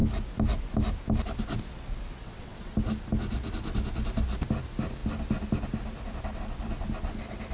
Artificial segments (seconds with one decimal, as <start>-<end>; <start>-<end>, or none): 2.2-2.7